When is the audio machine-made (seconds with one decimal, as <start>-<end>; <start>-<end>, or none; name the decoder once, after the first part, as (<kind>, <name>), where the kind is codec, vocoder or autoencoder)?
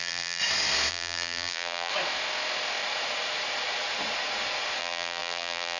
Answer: 0.0-0.4 (vocoder, BigVGAN v2); 0.9-1.9; 4.8-5.8